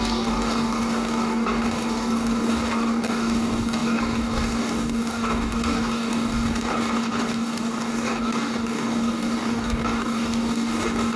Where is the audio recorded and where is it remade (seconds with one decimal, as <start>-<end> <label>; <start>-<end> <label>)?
0.0-11.2 remade

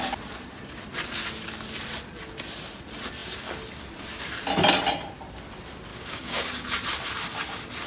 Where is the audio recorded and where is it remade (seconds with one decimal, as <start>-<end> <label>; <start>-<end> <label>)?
0.0-5.9 recorded; 5.9-6.5 remade; 6.5-7.9 recorded